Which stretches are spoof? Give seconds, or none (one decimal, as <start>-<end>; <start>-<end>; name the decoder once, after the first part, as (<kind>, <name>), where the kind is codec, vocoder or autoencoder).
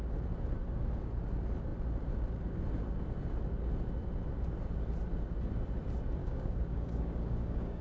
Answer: 6.2-7.8 (codec, DAC)